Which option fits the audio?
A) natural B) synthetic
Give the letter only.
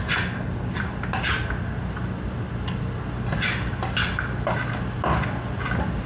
A